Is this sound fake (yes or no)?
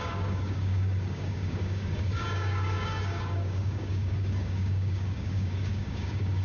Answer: yes